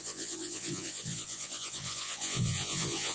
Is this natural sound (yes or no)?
no